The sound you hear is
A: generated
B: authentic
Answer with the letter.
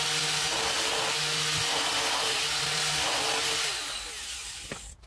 B